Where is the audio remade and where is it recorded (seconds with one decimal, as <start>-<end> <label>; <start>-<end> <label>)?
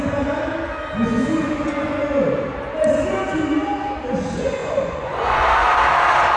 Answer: 0.0-1.4 recorded; 1.4-2.0 remade; 2.0-4.6 recorded; 4.6-5.8 remade; 5.8-6.4 recorded